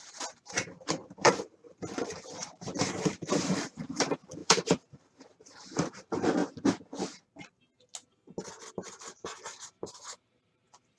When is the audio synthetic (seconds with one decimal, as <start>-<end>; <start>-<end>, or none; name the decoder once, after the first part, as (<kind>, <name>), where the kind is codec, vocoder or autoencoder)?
0.0-6.4 (vocoder, BigVGAN v2); 8.7-11.0